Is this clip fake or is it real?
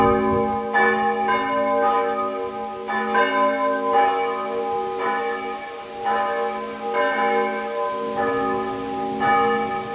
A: real